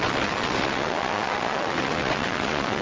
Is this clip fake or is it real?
fake